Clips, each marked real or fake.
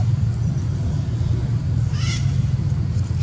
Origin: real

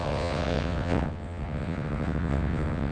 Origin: fake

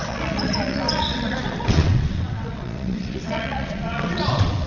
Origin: fake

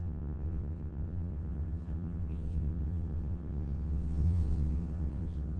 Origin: fake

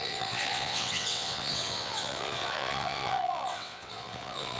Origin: fake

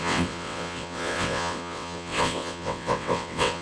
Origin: fake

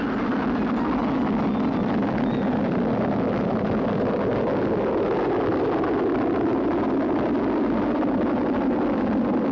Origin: real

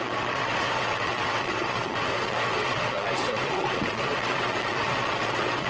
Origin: fake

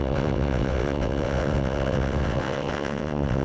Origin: fake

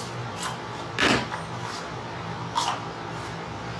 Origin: real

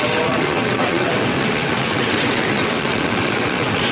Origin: fake